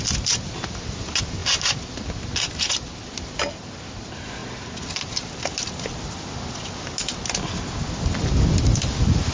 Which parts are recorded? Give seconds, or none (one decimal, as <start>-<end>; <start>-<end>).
0.0-9.3